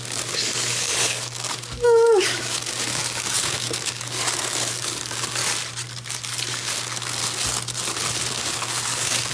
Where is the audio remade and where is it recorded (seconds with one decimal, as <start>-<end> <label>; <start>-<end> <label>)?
0.0-5.4 remade; 5.4-6.5 recorded; 6.5-7.2 remade; 7.2-8.3 recorded; 8.3-9.3 remade